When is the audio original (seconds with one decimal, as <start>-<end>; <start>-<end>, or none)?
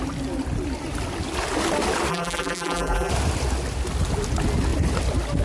0.0-2.1; 3.1-5.4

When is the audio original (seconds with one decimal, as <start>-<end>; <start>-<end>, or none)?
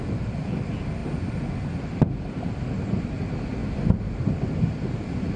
0.0-3.6; 4.3-5.4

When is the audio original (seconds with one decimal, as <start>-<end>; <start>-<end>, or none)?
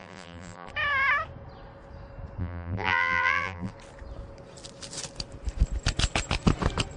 0.7-2.4; 3.7-7.0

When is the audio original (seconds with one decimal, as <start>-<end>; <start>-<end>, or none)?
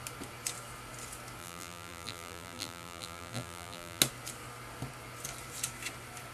0.0-1.4; 4.0-6.3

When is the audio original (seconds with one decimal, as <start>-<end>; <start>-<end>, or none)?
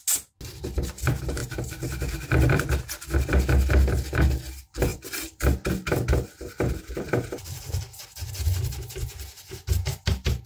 0.0-4.9; 7.8-10.5